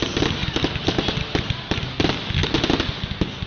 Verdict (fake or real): real